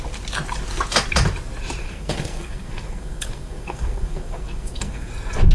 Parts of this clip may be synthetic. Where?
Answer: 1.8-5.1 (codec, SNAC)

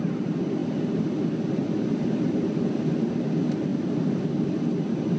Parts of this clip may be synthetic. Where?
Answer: none

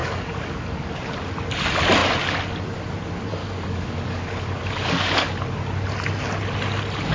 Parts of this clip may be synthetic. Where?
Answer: 0.0-1.0 (codec, DAC); 3.4-5.3

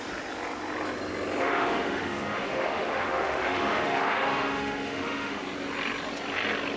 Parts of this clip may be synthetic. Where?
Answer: 1.4-5.4 (autoencoder, DAC-VAE)

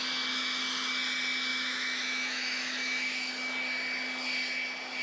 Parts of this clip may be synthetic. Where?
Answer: 1.5-3.3 (autoencoder, DAC-VAE)

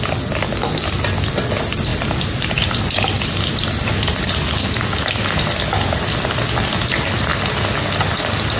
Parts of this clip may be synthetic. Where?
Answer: none